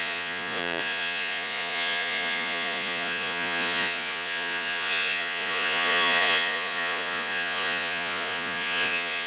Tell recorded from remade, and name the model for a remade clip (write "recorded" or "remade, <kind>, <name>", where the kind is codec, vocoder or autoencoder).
remade, vocoder, Vocos